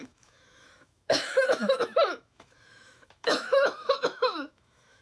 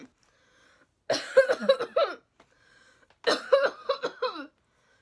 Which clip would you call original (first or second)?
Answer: second